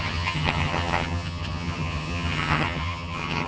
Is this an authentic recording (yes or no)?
no